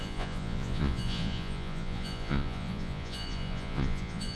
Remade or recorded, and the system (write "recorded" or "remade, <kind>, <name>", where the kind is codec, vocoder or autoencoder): remade, vocoder, Vocos